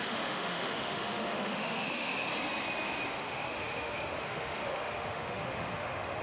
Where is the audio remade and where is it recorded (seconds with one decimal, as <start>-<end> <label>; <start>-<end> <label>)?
0.0-2.3 remade; 2.3-3.1 recorded; 3.1-6.2 remade

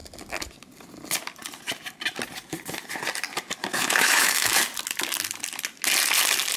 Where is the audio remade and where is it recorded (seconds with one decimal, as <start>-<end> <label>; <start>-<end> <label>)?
0.0-3.7 recorded; 3.7-4.6 remade; 4.6-6.6 recorded

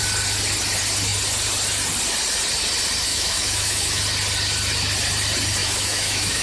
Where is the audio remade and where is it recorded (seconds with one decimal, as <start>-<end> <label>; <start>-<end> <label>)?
0.0-3.1 recorded; 3.1-4.0 remade; 4.0-5.6 recorded; 5.6-6.4 remade

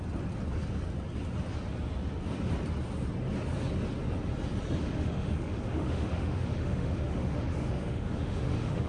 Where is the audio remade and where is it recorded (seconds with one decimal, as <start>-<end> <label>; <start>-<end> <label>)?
0.0-4.8 recorded; 4.8-8.9 remade

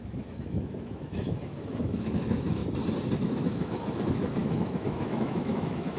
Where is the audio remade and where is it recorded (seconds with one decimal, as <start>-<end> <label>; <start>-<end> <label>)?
0.0-2.6 remade; 2.6-3.2 recorded; 3.2-6.0 remade

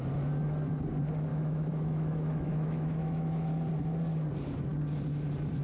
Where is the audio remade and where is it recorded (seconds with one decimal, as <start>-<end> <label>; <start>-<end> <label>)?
0.0-1.3 recorded; 1.3-3.5 remade; 3.5-5.6 recorded